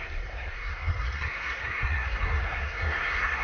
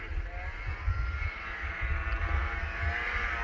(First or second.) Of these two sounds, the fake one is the first